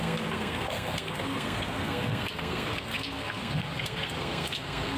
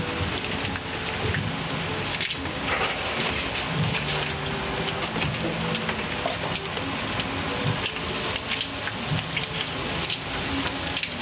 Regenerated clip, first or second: first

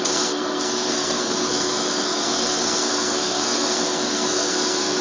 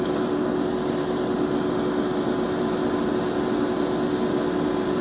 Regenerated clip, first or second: first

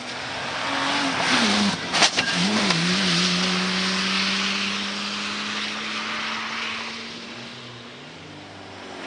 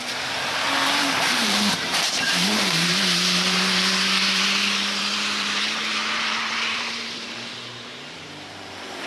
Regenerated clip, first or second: second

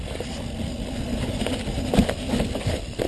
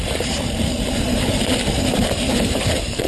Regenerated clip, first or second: second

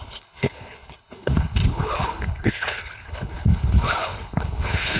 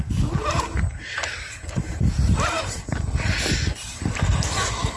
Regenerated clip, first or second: first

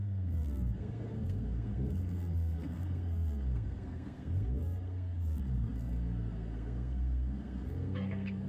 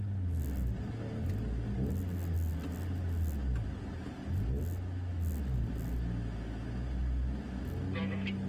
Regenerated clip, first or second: first